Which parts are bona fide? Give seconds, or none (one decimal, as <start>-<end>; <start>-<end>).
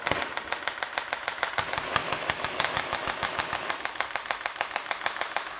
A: 0.0-2.0